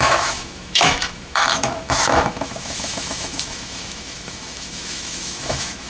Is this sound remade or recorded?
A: remade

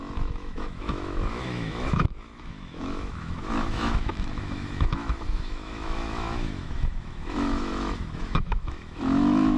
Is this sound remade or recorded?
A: remade